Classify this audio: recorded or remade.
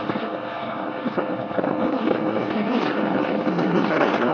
remade